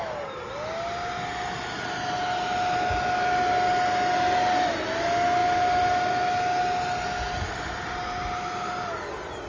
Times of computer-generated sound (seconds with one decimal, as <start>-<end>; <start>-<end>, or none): none